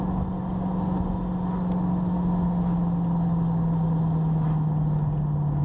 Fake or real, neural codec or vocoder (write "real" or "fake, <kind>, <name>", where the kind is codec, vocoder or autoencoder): real